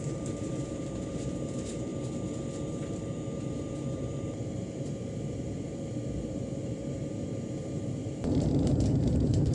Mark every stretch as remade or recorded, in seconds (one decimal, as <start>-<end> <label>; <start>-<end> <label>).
0.0-1.9 remade; 1.9-3.1 recorded; 3.1-9.5 remade